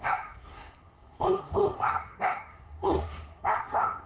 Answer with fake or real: fake